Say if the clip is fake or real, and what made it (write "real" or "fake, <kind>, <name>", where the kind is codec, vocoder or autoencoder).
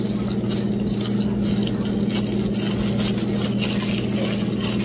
real